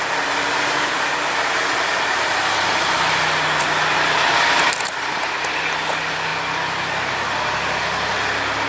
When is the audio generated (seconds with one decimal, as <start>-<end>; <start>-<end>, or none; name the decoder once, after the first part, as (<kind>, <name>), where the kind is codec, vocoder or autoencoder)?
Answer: none